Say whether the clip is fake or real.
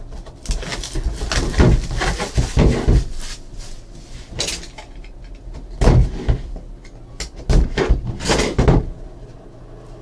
real